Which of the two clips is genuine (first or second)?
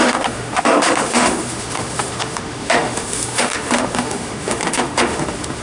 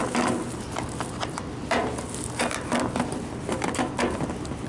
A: second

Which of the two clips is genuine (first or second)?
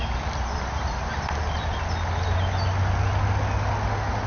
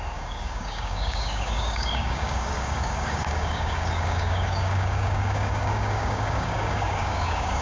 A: first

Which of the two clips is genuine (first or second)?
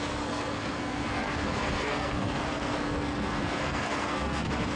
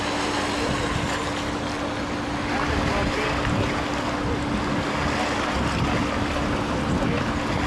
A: second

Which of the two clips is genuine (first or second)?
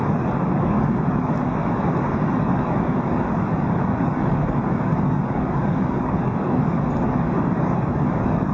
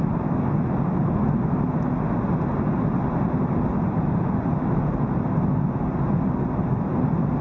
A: second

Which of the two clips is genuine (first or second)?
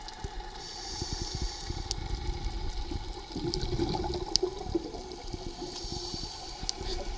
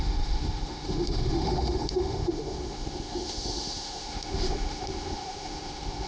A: first